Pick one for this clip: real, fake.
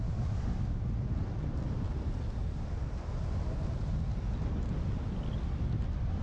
real